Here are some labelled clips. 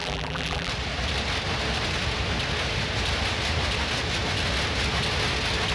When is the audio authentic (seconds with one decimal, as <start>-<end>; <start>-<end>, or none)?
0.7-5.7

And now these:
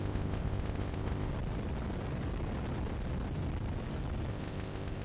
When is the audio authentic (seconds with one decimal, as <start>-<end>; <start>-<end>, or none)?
1.3-4.3

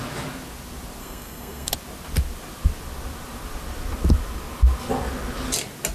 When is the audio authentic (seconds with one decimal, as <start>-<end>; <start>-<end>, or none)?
0.0-1.0; 1.7-5.9

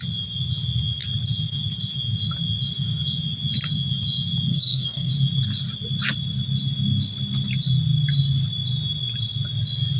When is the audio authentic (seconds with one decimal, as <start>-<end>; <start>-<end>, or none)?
0.0-4.5; 5.1-10.0

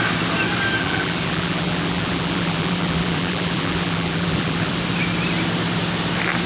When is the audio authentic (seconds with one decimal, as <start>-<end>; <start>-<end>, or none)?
0.0-0.8; 4.7-6.5